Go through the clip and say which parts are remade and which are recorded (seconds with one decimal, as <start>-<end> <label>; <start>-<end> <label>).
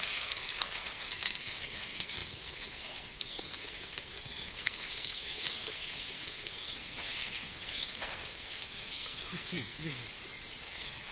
0.0-10.0 remade; 10.0-10.6 recorded; 10.6-11.1 remade